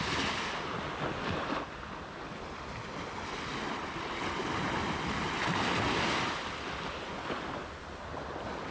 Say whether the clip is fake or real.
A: real